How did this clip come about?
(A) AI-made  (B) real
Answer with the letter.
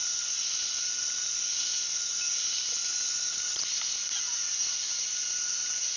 B